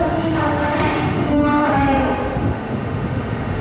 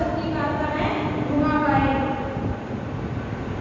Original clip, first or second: second